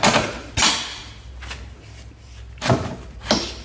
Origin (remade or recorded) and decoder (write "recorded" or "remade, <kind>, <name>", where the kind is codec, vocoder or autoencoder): recorded